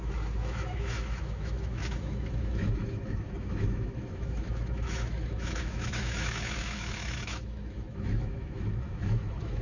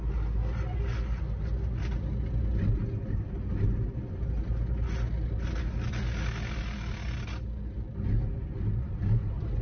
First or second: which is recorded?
second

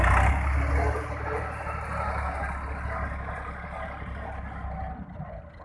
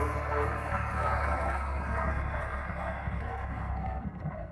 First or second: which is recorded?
first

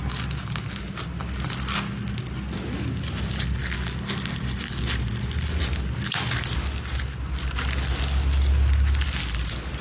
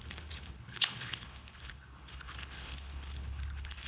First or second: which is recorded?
first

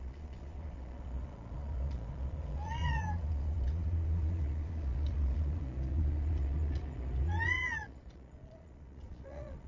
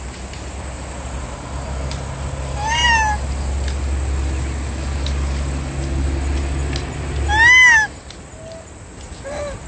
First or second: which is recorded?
second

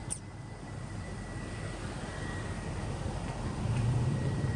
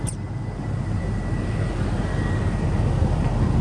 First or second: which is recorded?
second